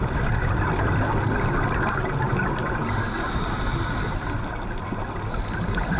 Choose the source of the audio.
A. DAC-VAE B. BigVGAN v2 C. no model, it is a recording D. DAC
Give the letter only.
C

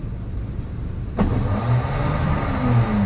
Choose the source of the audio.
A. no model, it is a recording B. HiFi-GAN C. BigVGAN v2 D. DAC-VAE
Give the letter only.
A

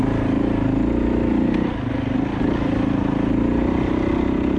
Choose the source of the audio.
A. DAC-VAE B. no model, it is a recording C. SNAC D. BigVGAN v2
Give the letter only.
B